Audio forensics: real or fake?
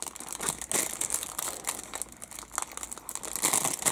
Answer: real